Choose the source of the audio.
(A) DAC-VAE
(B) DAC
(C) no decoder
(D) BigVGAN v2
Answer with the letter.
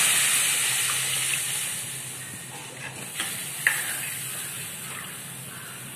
C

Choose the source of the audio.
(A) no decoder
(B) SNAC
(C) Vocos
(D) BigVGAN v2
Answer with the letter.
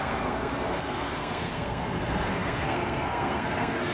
B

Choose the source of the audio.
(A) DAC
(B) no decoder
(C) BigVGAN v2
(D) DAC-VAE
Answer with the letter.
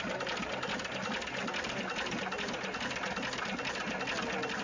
B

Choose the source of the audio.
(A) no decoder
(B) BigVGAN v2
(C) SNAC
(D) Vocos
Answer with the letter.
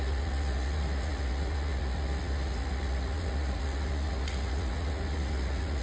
D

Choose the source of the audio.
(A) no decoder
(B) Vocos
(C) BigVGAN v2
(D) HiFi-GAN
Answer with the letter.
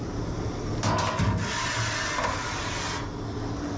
A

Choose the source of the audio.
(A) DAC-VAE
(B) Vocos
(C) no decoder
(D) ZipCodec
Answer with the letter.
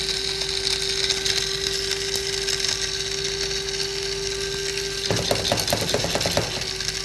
C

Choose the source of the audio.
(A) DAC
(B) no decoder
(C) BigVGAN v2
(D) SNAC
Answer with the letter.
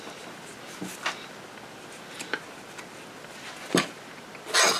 B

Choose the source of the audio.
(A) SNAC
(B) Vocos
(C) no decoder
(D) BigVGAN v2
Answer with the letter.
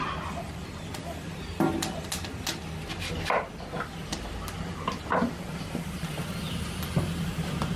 C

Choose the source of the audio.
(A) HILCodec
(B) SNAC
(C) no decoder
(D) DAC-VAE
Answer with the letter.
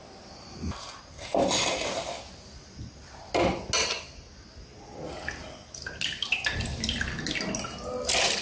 C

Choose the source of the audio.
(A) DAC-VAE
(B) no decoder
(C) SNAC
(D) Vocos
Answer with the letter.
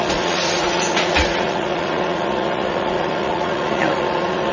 D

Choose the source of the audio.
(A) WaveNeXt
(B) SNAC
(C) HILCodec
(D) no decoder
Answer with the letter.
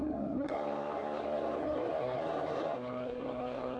B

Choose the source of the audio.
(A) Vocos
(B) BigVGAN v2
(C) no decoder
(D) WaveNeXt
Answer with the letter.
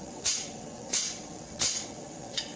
D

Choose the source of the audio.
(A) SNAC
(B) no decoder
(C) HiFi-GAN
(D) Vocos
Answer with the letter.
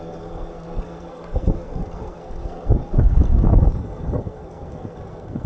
A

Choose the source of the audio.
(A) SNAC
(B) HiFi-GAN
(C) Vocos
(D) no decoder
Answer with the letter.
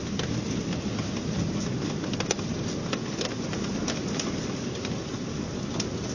D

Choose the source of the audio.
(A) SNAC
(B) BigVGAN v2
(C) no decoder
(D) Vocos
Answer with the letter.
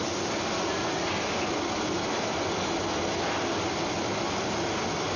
C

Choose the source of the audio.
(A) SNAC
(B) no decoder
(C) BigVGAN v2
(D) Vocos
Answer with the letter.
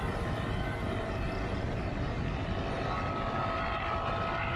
B